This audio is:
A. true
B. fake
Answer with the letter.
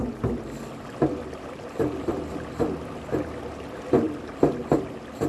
A